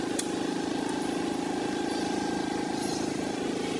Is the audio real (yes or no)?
yes